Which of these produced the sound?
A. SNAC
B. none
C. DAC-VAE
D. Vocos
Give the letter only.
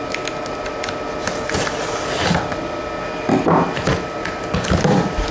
B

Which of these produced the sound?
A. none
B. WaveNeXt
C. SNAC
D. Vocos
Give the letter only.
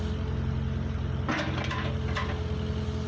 A